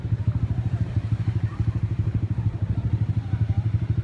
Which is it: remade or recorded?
remade